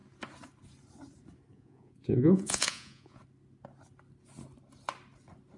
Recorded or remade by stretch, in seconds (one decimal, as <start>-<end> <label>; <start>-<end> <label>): 0.0-1.5 recorded; 1.5-3.2 remade; 3.2-5.6 recorded